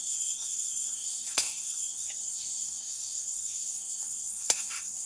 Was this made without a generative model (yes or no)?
no